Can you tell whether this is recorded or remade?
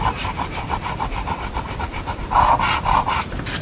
recorded